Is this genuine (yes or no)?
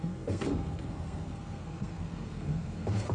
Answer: no